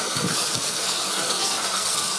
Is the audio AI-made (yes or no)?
yes